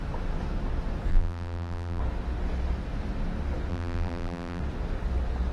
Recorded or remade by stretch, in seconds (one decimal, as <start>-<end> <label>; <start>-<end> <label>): 0.0-1.1 recorded; 1.1-2.0 remade; 2.0-3.7 recorded; 3.7-4.6 remade; 4.6-5.5 recorded